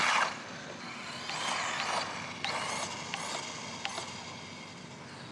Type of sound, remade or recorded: recorded